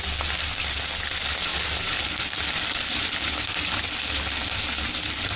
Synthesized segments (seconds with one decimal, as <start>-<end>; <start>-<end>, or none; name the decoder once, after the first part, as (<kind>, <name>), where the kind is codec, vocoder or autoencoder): none